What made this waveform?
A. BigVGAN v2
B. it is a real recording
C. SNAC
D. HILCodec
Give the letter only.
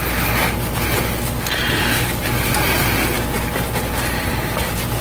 B